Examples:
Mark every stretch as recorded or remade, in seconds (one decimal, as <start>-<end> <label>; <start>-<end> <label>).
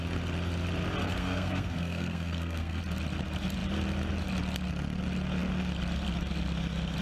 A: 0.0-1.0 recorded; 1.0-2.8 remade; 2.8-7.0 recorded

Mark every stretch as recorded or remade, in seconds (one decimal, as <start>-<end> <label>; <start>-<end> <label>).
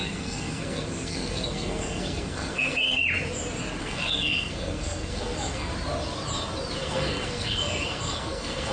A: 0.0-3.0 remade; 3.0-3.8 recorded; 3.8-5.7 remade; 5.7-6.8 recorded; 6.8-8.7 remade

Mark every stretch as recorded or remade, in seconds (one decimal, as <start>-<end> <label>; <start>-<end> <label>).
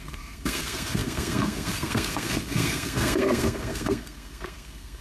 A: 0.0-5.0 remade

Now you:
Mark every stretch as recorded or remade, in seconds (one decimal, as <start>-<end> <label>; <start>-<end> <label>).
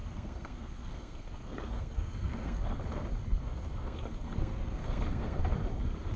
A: 0.0-2.6 remade; 2.6-3.4 recorded; 3.4-5.4 remade; 5.4-6.2 recorded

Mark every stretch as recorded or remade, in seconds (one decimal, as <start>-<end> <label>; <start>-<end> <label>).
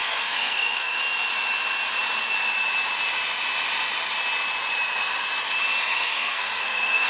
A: 0.0-1.0 remade; 1.0-5.9 recorded; 5.9-7.1 remade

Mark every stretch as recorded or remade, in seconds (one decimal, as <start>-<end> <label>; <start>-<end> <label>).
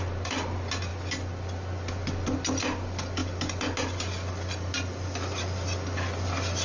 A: 0.0-6.6 recorded